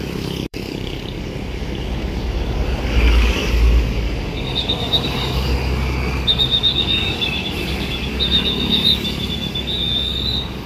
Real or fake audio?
fake